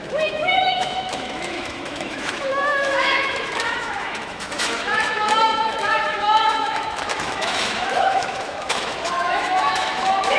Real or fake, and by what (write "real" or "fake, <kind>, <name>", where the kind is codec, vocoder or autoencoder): fake, autoencoder, DAC-VAE